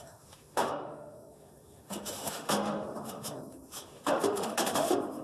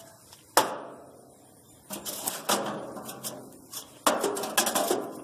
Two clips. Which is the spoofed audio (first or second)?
first